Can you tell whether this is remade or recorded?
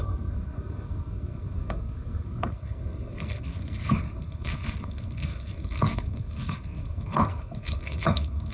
remade